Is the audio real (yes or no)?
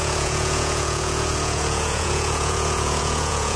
no